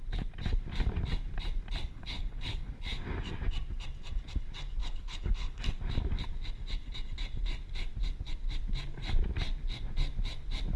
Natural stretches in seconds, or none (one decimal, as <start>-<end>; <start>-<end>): 0.0-1.9; 2.7-4.8; 5.6-10.8